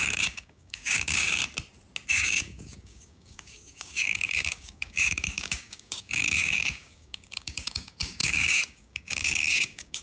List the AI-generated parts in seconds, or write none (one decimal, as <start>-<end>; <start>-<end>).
0.0-1.4; 2.1-10.0